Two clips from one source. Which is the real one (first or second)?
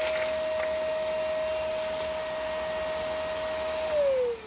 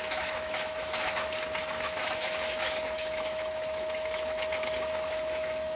first